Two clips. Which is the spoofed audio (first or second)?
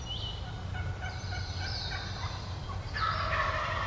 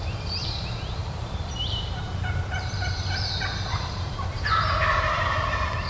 second